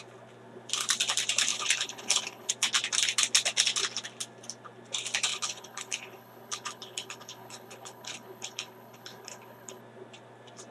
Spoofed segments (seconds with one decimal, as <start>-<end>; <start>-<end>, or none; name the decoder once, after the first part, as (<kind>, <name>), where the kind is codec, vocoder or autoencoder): 1.5-2.5 (codec, HILCodec); 5.3-9.8